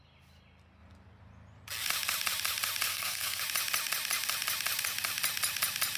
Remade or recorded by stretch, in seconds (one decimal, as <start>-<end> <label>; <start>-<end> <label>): 0.0-2.9 recorded; 2.9-3.4 remade; 3.4-6.0 recorded